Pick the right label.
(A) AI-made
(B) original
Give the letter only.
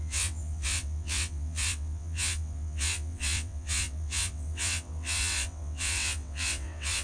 A